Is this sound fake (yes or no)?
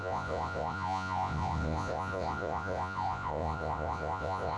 yes